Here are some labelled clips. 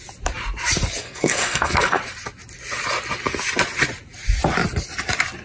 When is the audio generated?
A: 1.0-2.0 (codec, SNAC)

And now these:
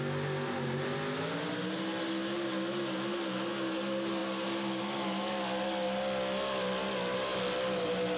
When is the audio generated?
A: none

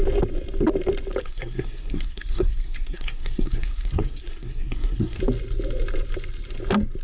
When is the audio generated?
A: 1.2-5.2 (codec, SNAC)

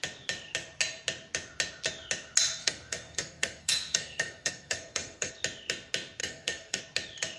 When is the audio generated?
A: 2.6-5.3 (codec, SNAC); 6.2-6.8

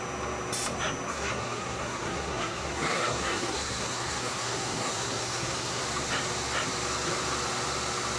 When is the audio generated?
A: 1.1-5.8 (codec, SNAC)